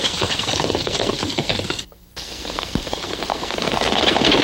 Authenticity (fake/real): fake